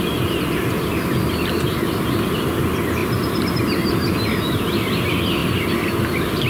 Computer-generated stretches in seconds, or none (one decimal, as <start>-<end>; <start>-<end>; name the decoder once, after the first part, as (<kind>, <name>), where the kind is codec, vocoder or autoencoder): 3.0-3.5 (vocoder, BigVGAN v2)